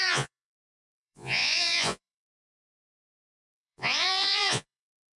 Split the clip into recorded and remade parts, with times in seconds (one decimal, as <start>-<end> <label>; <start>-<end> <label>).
0.0-5.2 remade